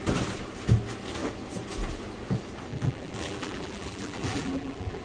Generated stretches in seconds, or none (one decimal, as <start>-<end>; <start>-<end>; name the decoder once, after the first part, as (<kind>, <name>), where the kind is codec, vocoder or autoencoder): 2.7-5.0 (vocoder, BigVGAN v2)